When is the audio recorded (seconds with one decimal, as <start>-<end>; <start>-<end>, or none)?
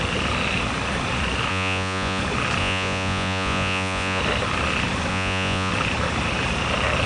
0.0-1.5; 2.2-2.6; 4.2-5.1; 5.7-7.1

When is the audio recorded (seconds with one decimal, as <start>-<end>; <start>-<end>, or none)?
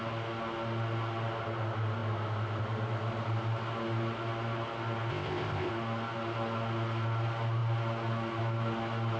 0.0-5.1; 5.7-9.2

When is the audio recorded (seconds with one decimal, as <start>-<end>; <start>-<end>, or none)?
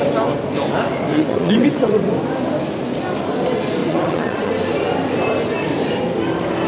0.0-1.1; 2.0-3.8; 4.5-6.7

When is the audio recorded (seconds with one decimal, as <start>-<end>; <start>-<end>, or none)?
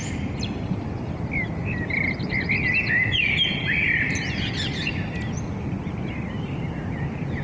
0.0-7.4